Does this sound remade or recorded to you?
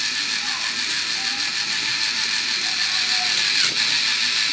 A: recorded